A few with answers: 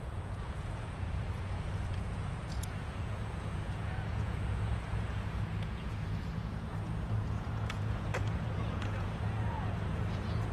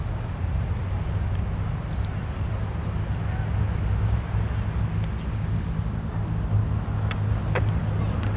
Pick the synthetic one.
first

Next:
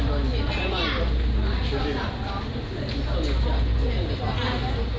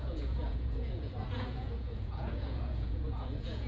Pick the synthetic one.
second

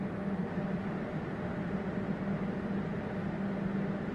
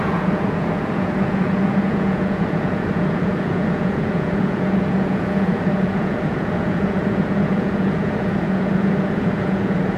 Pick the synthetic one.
second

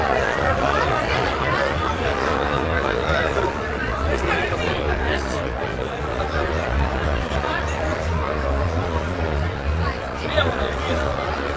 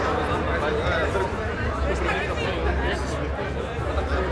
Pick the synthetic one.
first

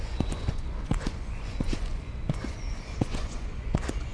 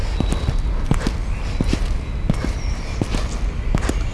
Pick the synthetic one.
first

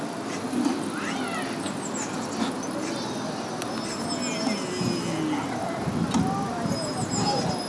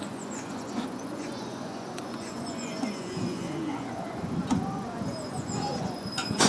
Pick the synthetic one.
second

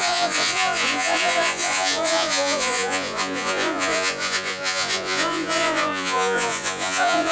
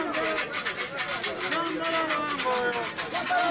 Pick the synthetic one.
first